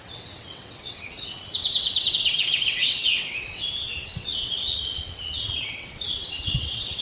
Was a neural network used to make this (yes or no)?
yes